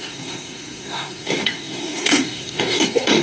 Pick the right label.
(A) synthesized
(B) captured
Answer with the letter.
A